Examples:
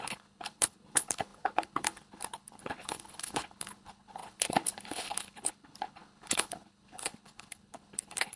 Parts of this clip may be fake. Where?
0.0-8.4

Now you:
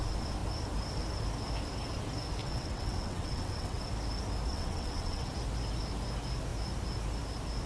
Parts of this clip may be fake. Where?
2.4-3.8; 4.5-5.3